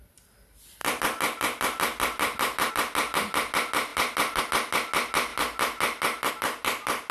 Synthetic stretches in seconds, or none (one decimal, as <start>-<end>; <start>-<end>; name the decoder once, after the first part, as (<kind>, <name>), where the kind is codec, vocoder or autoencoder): none

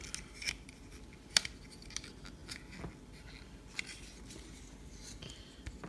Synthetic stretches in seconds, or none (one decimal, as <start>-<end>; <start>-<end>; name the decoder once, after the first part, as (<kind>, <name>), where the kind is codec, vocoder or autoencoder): none

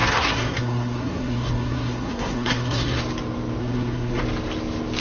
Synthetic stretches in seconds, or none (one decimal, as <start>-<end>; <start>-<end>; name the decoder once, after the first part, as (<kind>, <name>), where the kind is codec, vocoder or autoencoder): 0.0-3.0 (codec, SNAC); 3.6-4.2